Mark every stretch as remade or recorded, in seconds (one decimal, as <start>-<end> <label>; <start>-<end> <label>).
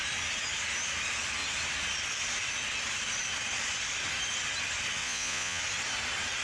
0.0-5.0 recorded; 5.0-5.6 remade; 5.6-6.4 recorded